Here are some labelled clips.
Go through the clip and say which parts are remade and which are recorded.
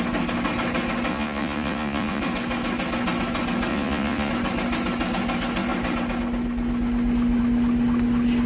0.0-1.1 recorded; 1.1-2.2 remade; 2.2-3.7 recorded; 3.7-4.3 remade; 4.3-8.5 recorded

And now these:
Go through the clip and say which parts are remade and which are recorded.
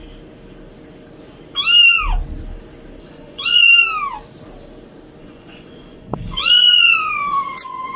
0.0-3.0 recorded; 3.0-3.7 remade; 3.7-5.2 recorded; 5.2-8.0 remade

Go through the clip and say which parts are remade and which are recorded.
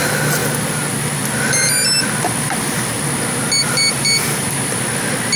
0.0-5.4 recorded